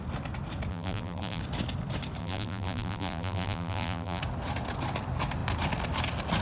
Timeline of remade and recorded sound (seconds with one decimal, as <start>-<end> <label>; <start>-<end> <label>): 0.0-0.7 recorded; 0.7-1.4 remade; 1.4-2.2 recorded; 2.2-4.2 remade; 4.2-6.4 recorded